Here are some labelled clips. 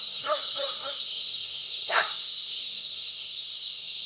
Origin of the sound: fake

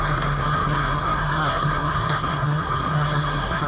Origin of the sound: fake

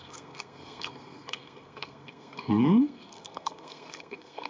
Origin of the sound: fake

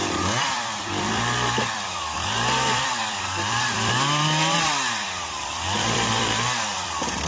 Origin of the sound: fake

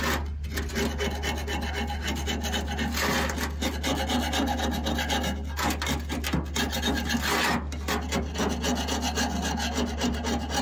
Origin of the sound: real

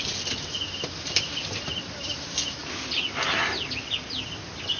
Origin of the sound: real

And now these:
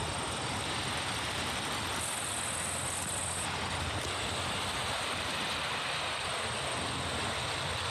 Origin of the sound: real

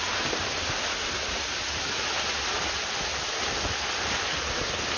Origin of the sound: real